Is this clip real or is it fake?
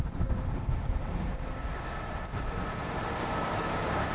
fake